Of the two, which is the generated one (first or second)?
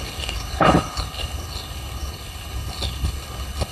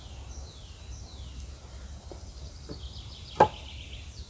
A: first